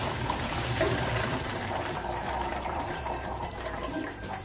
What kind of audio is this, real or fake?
fake